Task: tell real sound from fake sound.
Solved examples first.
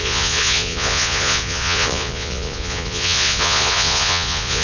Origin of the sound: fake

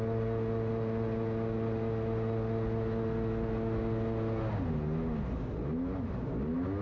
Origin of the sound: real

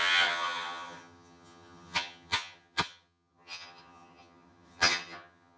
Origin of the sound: fake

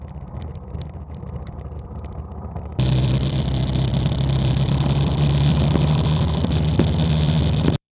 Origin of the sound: fake